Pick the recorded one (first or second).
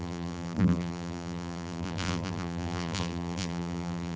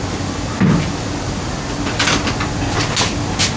second